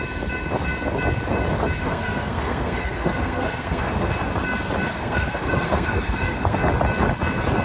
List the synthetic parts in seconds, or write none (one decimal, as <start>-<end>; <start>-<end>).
1.8-4.1; 4.9-6.6